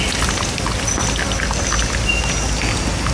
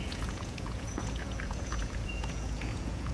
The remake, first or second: second